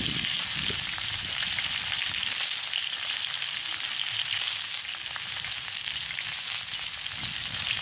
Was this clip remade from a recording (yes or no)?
no